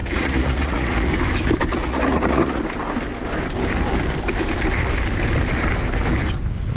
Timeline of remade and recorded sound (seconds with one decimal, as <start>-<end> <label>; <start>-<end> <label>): 0.0-1.1 remade; 1.1-1.7 recorded; 1.7-2.6 remade; 2.6-6.8 recorded